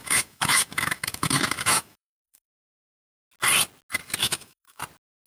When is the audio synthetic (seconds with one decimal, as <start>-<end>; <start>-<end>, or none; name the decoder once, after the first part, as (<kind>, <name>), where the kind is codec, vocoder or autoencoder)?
0.0-2.6 (autoencoder, DAC-VAE); 4.2-4.8